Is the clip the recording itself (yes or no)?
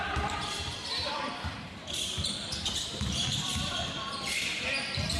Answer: no